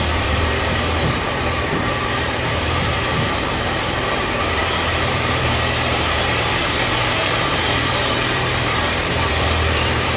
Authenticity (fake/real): fake